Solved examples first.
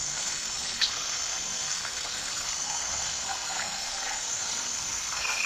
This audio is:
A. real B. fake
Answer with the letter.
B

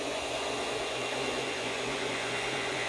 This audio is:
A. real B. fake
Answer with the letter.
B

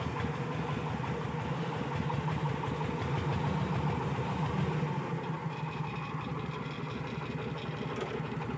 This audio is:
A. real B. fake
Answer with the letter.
A